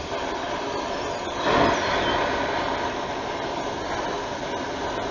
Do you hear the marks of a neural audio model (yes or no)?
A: no